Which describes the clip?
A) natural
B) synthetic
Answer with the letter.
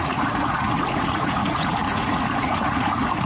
B